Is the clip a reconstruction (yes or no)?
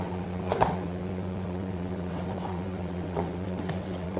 yes